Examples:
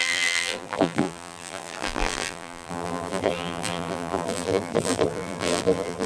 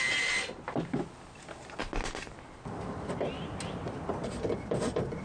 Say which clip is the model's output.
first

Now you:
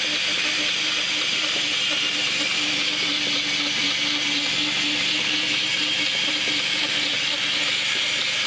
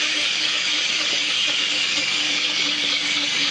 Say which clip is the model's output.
second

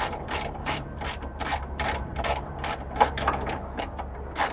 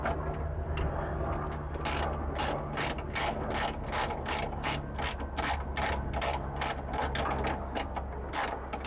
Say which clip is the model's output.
first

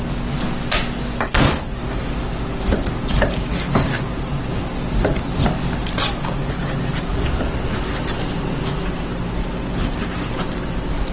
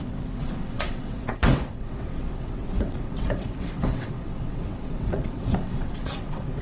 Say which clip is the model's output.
second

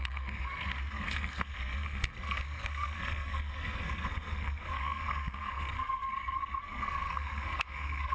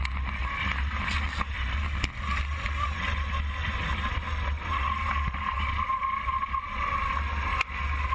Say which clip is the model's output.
first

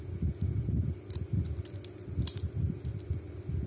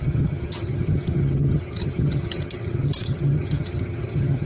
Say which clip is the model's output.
second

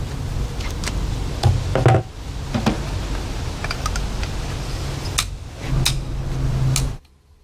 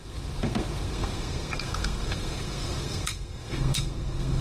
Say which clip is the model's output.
second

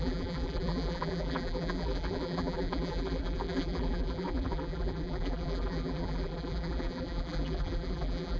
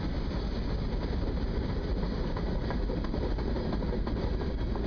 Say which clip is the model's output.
first